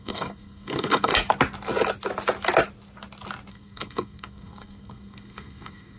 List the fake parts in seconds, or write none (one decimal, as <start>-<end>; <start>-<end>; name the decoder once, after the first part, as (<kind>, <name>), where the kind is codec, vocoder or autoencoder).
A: 0.0-1.1 (codec, SNAC); 3.5-6.0